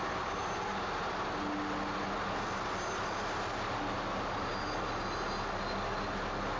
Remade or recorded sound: recorded